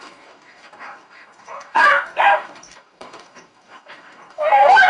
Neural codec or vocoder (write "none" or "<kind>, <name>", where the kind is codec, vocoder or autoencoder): codec, DAC